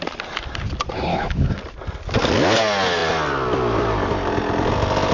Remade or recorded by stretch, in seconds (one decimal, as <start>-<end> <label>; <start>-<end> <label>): 0.0-1.1 recorded; 1.1-1.6 remade; 1.6-5.1 recorded